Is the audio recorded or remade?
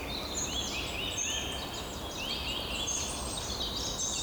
recorded